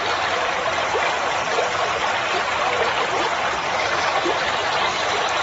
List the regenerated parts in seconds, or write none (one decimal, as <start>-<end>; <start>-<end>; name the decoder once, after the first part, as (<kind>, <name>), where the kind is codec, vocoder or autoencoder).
0.0-0.7 (vocoder, BigVGAN v2); 3.3-4.6